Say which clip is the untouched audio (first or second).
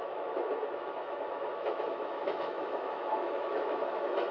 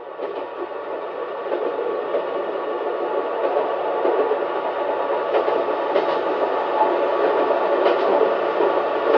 second